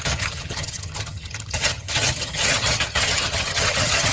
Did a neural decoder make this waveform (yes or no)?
yes